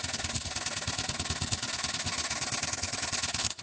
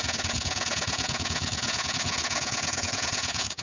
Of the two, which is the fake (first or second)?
second